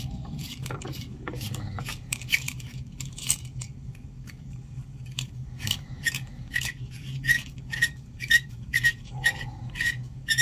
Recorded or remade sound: remade